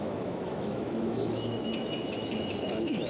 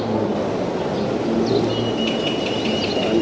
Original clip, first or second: second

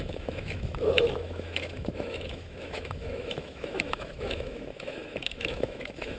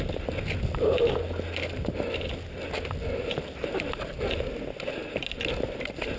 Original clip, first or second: second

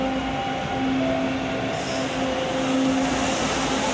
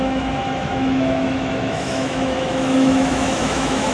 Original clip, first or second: first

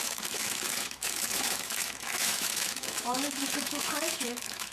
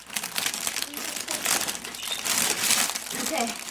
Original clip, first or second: second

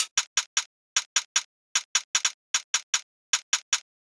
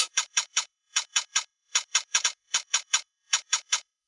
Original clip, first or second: first